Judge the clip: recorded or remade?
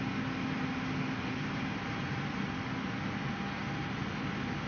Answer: recorded